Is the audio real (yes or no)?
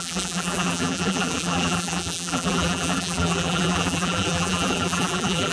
no